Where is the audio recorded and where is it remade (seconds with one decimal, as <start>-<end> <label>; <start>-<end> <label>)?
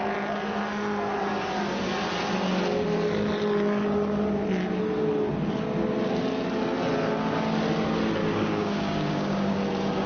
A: 0.0-8.2 recorded; 8.2-9.6 remade; 9.6-10.1 recorded